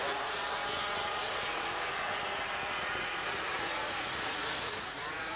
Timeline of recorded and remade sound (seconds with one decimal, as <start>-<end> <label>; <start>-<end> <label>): 0.0-5.4 remade